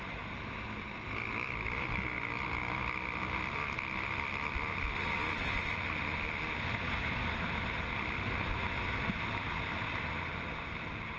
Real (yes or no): yes